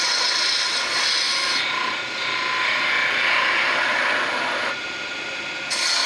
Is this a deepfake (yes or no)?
no